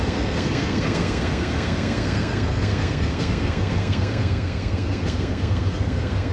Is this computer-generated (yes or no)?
yes